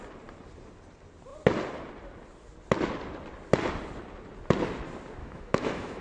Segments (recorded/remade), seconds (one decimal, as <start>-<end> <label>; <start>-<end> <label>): 0.0-5.2 recorded; 5.2-6.0 remade